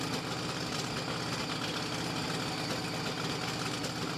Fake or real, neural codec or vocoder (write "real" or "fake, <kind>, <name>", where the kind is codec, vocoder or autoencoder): real